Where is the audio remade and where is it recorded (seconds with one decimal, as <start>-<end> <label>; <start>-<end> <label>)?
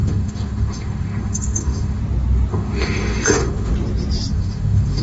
0.0-2.0 remade; 2.0-2.5 recorded; 2.5-3.7 remade; 3.7-4.3 recorded; 4.3-5.0 remade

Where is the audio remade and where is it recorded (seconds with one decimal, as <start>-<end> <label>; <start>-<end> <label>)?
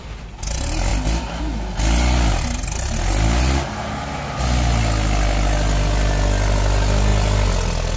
0.0-8.0 recorded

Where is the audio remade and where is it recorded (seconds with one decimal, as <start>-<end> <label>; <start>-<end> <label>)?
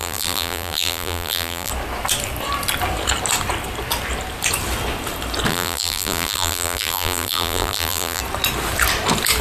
0.0-1.7 remade; 1.7-5.5 recorded; 5.5-8.2 remade; 8.2-9.4 recorded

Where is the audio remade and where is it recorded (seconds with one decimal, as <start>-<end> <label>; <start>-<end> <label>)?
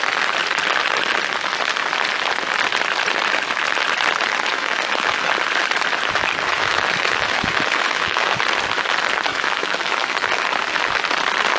0.0-4.5 recorded; 4.5-5.3 remade; 5.3-6.5 recorded; 6.5-8.4 remade; 8.4-9.3 recorded; 9.3-10.5 remade; 10.5-11.6 recorded